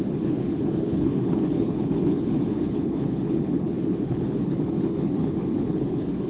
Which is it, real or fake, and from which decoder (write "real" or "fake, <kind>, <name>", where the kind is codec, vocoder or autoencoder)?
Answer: fake, codec, HILCodec